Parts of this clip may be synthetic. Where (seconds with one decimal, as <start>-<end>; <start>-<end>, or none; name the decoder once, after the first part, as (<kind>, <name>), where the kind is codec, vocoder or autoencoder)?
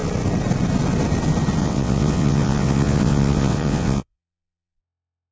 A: 1.6-4.8 (vocoder, WaveNeXt)